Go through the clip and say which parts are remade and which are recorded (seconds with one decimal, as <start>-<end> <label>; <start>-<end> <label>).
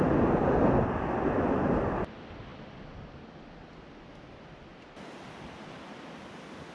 0.0-6.7 recorded